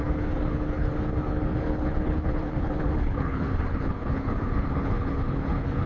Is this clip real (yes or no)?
no